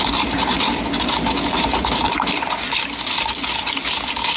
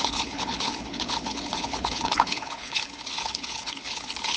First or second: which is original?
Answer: first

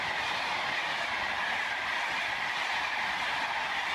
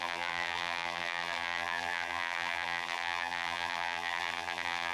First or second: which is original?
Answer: first